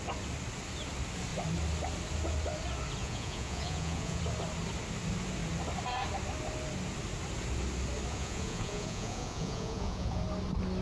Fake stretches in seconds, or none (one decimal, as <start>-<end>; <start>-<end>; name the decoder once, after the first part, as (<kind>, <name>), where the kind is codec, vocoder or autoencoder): 3.0-4.2 (vocoder, Vocos); 8.1-10.2

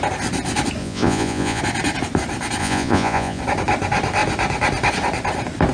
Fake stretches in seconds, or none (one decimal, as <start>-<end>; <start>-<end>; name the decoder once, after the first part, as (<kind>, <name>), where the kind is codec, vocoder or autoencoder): 0.8-1.6 (vocoder, Vocos); 2.6-3.4

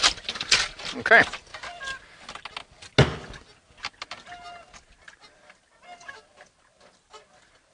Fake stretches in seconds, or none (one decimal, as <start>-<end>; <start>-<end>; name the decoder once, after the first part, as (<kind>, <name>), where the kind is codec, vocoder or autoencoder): none